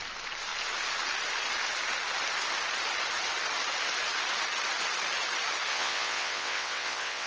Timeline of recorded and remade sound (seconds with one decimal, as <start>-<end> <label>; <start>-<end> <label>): 0.0-5.7 recorded; 5.7-7.3 remade